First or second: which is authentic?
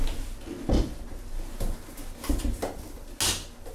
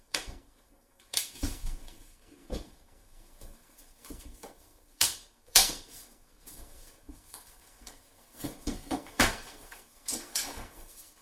first